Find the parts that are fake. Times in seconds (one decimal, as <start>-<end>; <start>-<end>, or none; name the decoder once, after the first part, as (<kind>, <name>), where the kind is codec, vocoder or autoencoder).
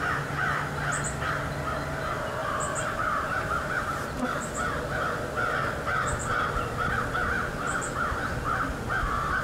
none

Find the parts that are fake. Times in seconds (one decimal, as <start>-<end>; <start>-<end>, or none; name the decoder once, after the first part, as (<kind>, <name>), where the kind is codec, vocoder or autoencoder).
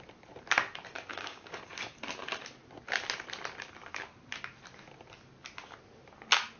1.1-1.6 (codec, DAC)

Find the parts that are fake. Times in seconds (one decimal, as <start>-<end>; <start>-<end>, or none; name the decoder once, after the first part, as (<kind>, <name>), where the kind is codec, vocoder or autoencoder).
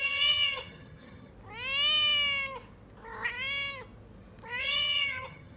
0.0-1.3 (vocoder, HiFi-GAN); 4.6-5.6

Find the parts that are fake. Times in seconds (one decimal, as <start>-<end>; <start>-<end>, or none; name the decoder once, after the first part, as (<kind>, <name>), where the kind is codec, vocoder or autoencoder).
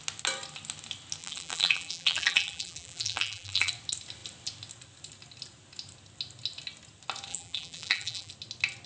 1.2-3.7 (vocoder, BigVGAN v2); 7.3-8.3